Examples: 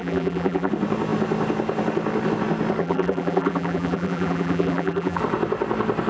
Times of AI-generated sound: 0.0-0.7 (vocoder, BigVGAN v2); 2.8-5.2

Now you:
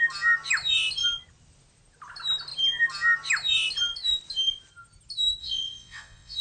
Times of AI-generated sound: 5.4-6.4 (vocoder, WaveNeXt)